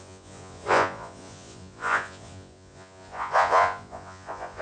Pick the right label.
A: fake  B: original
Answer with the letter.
A